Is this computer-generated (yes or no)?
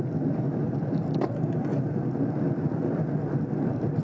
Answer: no